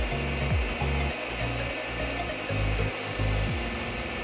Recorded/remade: recorded